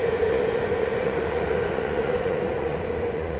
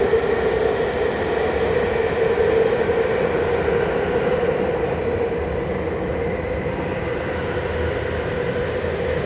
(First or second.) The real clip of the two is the second